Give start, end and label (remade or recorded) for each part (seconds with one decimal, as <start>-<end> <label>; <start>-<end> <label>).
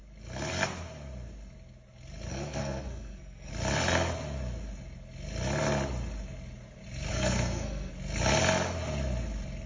0.0-2.3 recorded; 2.3-3.5 remade; 3.5-7.1 recorded; 7.1-7.9 remade; 7.9-9.7 recorded